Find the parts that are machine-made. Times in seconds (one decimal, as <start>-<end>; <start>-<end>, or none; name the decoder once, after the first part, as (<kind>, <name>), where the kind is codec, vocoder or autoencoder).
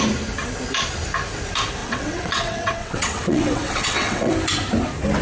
1.8-4.3 (vocoder, WaveNeXt)